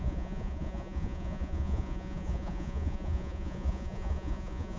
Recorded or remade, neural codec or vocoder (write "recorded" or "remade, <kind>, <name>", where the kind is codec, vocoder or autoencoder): remade, vocoder, Vocos